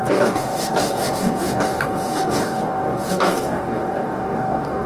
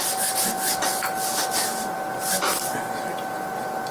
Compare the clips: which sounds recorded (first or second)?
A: second